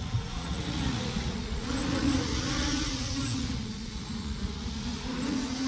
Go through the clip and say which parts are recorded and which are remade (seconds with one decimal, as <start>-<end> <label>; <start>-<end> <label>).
0.0-5.7 remade

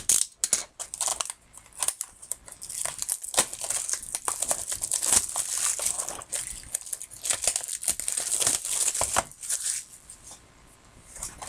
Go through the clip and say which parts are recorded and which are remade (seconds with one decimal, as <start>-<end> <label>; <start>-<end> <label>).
0.0-11.5 recorded